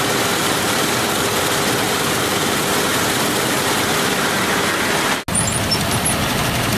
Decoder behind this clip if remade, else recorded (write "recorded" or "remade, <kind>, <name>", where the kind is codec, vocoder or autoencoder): recorded